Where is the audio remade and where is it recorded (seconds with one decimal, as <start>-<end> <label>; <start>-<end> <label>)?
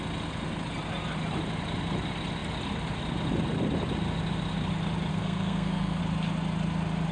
0.0-5.1 recorded; 5.1-6.0 remade; 6.0-7.1 recorded